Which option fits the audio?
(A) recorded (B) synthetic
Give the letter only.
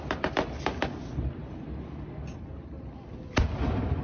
A